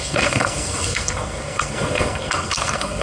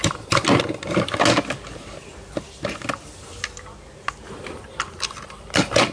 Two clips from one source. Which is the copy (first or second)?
first